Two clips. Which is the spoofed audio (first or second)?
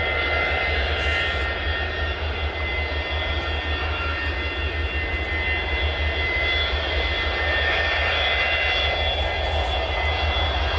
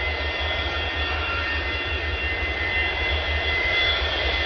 second